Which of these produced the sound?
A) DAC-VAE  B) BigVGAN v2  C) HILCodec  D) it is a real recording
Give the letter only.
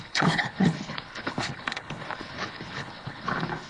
C